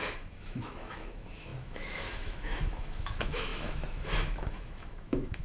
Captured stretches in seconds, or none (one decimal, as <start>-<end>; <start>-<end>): none